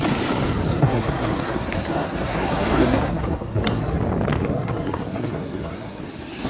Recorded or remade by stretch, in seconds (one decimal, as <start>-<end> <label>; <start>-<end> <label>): 0.0-0.7 recorded; 0.7-4.0 remade; 4.0-4.4 recorded; 4.4-6.0 remade; 6.0-6.5 recorded